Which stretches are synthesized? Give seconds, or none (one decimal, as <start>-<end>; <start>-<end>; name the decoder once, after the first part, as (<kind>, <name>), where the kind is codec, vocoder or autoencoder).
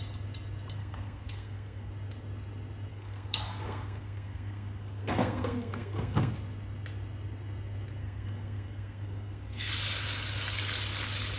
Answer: 0.8-1.9 (codec, SNAC); 2.9-6.3; 8.0-9.7